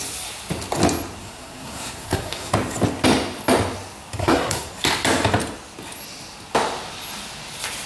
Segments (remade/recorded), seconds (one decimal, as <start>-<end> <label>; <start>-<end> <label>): 0.0-1.2 recorded; 1.2-2.5 remade; 2.5-4.2 recorded; 4.2-4.7 remade; 4.7-7.9 recorded